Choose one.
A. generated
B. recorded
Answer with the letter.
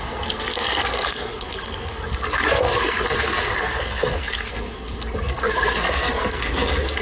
A